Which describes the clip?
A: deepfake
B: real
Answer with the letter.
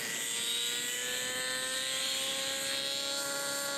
B